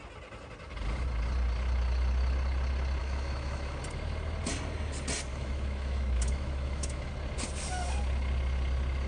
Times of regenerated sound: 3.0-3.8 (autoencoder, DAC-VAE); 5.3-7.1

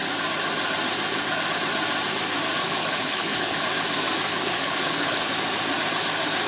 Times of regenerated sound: 2.6-3.6 (codec, HILCodec); 4.3-5.3

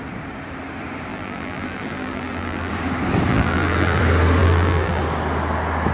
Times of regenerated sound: 1.1-2.7 (vocoder, BigVGAN v2); 3.3-4.0; 4.4-5.0